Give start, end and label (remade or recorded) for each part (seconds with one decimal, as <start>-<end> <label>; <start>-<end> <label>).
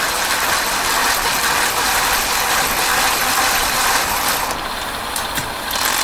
0.0-6.0 recorded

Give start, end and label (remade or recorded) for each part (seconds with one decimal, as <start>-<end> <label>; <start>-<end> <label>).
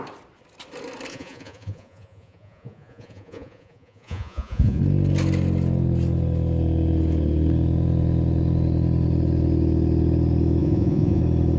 0.0-1.1 recorded; 1.1-4.8 remade; 4.8-10.6 recorded; 10.6-11.2 remade; 11.2-11.6 recorded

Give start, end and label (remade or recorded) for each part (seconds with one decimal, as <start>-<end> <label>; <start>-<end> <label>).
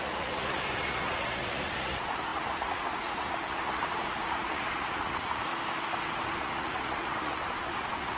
0.0-5.5 remade; 5.5-6.4 recorded; 6.4-8.2 remade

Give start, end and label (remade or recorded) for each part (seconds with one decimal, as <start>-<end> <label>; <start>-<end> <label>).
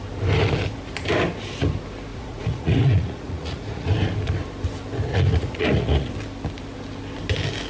0.0-2.1 recorded; 2.1-3.9 remade; 3.9-5.1 recorded; 5.1-6.1 remade; 6.1-7.7 recorded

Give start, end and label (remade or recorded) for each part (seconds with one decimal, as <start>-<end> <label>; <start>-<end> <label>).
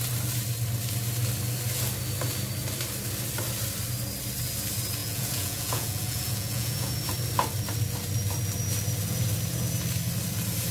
0.0-5.0 recorded; 5.0-6.9 remade; 6.9-10.7 recorded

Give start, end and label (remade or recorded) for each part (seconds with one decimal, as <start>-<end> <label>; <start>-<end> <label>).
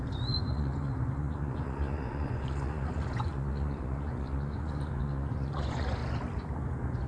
0.0-6.0 remade; 6.0-7.1 recorded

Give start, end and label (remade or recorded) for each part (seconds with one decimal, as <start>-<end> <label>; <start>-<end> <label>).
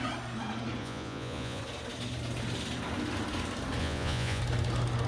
0.0-0.8 recorded; 0.8-1.6 remade; 1.6-3.8 recorded; 3.8-4.4 remade; 4.4-5.1 recorded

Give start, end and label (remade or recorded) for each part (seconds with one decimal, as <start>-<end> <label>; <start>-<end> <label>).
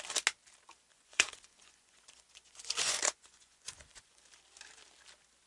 0.0-0.9 recorded; 0.9-4.2 remade; 4.2-5.5 recorded